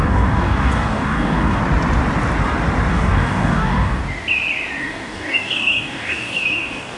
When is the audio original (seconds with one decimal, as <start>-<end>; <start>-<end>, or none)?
1.6-2.9; 4.0-4.8